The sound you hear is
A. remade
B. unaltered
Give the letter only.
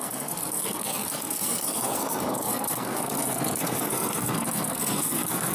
A